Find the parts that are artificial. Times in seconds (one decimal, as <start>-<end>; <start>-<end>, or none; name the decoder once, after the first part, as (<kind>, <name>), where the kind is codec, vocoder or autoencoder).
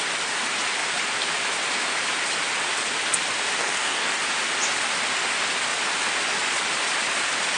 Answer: 3.6-4.2 (codec, DAC)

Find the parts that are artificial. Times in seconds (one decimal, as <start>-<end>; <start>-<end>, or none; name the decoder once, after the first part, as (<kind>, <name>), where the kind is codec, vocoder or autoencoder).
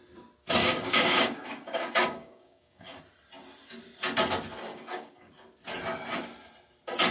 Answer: 0.6-3.0 (codec, DAC); 4.7-5.3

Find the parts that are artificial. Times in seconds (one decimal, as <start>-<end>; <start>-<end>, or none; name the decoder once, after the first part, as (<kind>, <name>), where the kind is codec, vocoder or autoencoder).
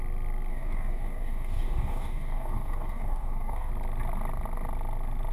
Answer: 0.5-3.7 (codec, DAC)